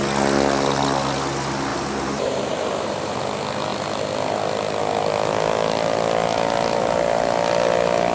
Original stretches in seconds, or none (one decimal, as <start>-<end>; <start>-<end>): 0.0-1.7; 3.2-8.1